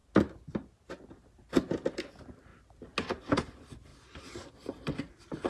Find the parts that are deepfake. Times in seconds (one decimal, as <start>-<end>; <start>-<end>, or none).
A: none